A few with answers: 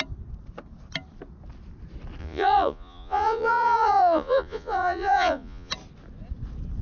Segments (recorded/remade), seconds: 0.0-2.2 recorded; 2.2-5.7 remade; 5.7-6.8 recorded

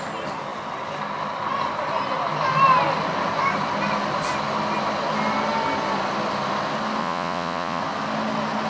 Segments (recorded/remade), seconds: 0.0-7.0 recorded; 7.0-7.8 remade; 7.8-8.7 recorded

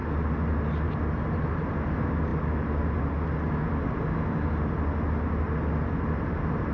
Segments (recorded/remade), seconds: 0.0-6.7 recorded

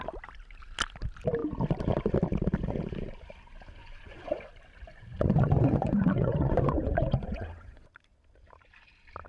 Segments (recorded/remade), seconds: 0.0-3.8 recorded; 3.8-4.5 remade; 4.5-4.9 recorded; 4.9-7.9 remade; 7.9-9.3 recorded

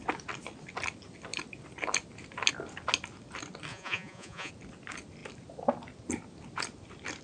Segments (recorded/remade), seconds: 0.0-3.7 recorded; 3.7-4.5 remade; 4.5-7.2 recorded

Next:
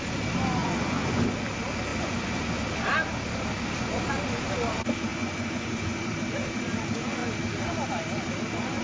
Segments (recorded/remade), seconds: 0.0-0.6 recorded; 0.6-1.2 remade; 1.2-1.9 recorded; 1.9-2.6 remade; 2.6-5.1 recorded; 5.1-6.1 remade; 6.1-8.8 recorded

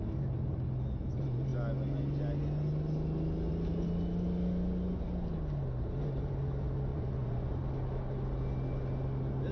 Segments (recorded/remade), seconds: 0.0-6.9 recorded; 6.9-7.5 remade; 7.5-9.5 recorded

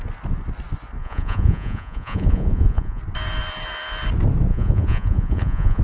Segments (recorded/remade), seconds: 0.0-1.0 recorded; 1.0-3.0 remade; 3.0-4.5 recorded; 4.5-5.8 remade